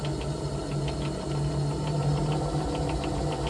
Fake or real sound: real